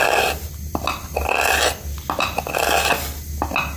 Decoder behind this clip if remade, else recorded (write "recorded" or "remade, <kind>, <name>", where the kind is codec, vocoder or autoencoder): recorded